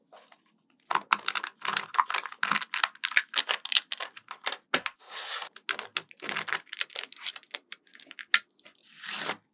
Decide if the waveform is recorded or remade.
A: recorded